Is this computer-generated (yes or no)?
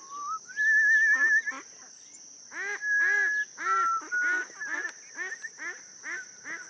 no